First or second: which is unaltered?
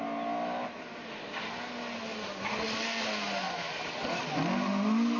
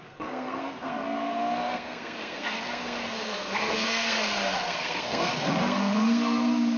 first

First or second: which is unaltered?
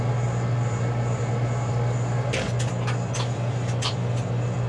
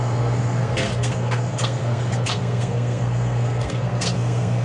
first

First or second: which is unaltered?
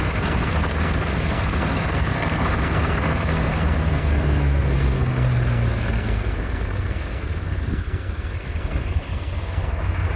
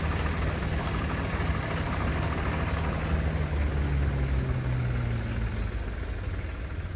second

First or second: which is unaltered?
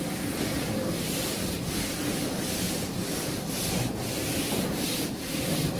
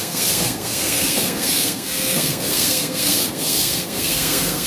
first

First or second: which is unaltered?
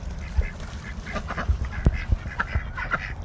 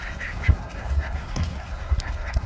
first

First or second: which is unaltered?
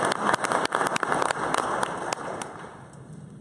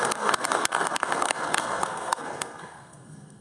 first